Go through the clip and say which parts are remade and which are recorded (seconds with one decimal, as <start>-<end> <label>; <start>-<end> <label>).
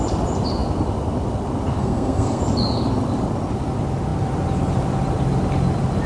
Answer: 0.0-1.8 recorded; 1.8-2.4 remade; 2.4-6.1 recorded